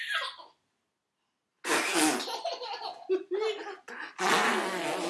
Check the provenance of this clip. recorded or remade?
recorded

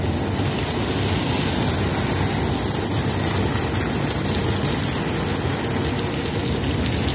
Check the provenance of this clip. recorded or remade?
recorded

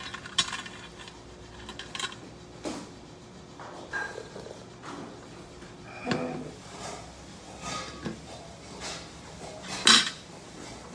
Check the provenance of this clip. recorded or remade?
recorded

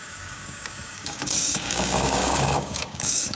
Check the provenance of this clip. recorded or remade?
remade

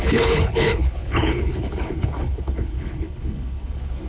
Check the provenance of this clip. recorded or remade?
remade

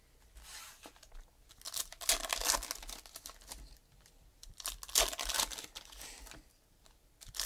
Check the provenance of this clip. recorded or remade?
recorded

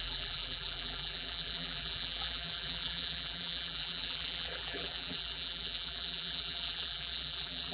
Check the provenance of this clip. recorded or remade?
remade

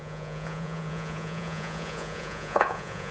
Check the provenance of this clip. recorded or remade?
remade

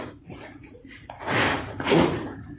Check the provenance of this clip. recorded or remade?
remade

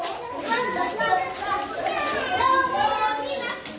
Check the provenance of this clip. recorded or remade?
recorded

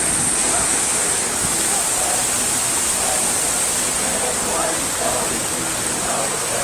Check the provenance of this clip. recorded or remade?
recorded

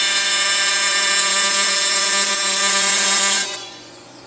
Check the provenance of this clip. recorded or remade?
remade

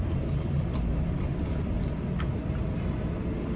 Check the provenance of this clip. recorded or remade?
recorded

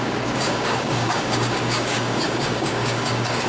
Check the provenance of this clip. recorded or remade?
remade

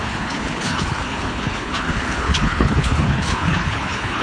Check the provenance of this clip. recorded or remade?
remade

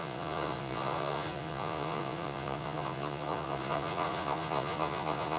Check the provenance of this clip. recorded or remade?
remade